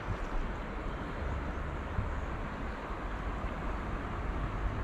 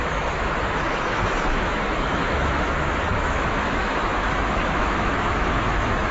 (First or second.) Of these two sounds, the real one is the first